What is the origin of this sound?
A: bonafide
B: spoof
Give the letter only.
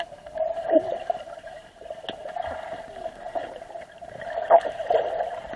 A